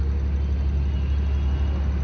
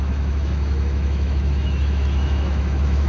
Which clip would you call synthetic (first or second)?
second